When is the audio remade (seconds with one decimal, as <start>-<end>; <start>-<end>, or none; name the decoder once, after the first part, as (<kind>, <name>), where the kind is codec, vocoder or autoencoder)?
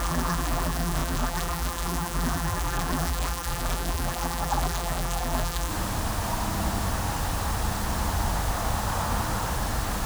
0.0-5.7 (vocoder, BigVGAN v2)